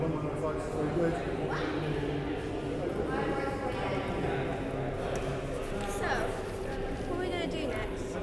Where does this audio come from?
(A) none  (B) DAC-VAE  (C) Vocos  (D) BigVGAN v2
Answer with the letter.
A